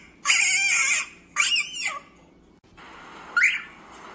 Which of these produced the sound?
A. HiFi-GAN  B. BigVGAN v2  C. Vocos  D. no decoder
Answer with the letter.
D